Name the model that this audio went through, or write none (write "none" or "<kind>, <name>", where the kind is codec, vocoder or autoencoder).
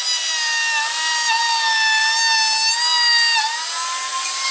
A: none